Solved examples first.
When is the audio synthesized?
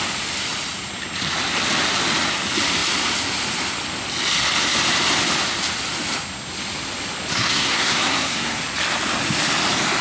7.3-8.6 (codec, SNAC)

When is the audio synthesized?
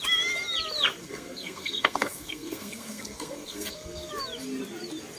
1.0-4.1 (codec, SNAC)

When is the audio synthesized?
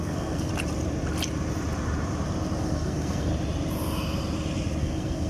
0.0-0.5 (codec, SNAC); 2.6-3.3; 4.8-5.3